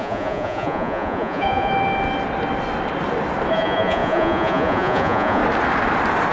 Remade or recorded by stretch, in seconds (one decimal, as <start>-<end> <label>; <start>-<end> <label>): 0.0-1.7 remade; 1.7-3.5 recorded; 3.5-5.4 remade; 5.4-6.3 recorded